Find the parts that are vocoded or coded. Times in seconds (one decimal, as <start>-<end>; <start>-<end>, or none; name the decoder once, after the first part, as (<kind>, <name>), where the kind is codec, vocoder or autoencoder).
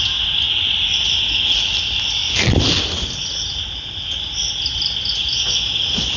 none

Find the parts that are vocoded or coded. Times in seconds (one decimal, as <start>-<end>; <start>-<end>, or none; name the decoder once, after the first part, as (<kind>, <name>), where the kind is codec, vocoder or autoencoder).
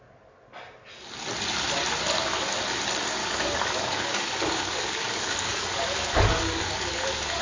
3.2-7.4 (codec, DAC)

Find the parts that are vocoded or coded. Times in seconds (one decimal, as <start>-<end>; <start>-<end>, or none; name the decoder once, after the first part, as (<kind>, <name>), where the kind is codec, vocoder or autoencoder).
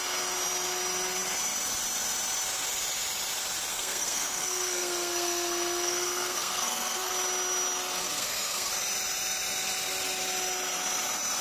3.7-7.1 (codec, SNAC); 8.0-8.7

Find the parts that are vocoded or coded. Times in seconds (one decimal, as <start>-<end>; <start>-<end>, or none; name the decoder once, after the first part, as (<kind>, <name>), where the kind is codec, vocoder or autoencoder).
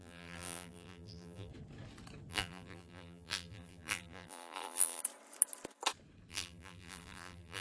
0.0-1.5 (vocoder, BigVGAN v2); 2.3-5.0; 6.3-7.6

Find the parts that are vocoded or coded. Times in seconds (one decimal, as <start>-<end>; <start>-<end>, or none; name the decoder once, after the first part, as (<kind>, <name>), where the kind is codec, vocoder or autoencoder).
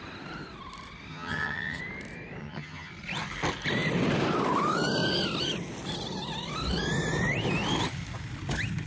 1.1-1.8 (vocoder, HiFi-GAN); 2.4-2.9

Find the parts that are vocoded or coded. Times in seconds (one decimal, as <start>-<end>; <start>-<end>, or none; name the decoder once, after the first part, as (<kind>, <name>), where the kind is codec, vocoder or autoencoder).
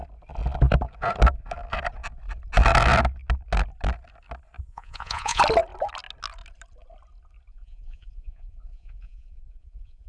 4.6-5.4 (vocoder, Vocos); 7.5-10.1